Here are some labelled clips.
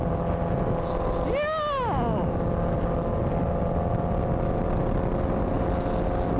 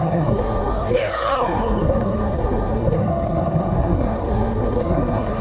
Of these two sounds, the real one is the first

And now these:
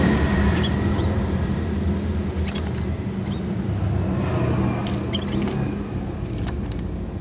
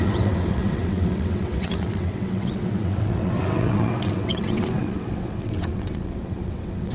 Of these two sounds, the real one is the first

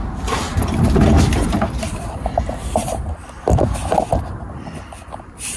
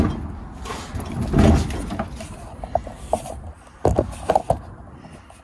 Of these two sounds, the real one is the second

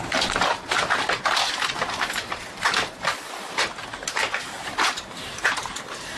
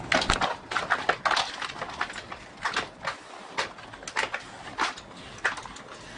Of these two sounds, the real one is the second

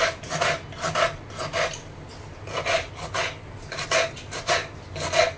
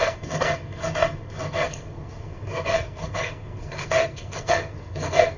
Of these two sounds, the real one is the first